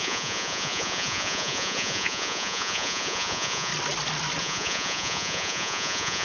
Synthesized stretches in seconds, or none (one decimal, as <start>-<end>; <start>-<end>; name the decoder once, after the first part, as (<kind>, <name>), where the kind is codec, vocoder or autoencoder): 0.0-3.7 (vocoder, Vocos); 4.4-6.2